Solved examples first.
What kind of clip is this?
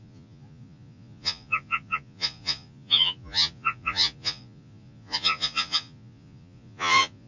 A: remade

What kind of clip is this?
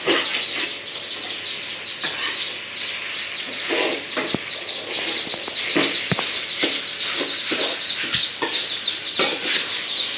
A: recorded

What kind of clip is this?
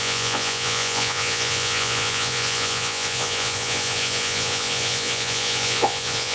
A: remade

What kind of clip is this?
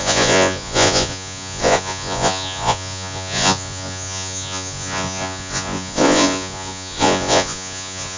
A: remade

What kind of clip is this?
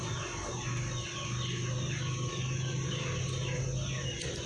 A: recorded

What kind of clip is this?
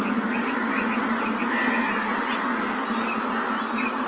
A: recorded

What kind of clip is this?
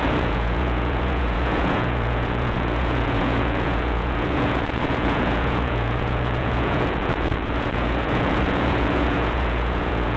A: remade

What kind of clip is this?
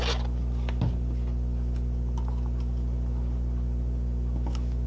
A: recorded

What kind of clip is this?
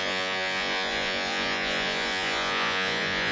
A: remade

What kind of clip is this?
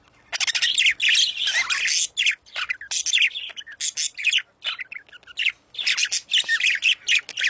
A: recorded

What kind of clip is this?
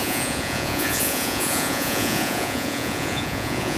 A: remade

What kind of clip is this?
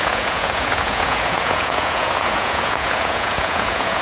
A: remade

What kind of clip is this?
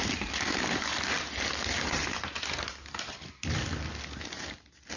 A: recorded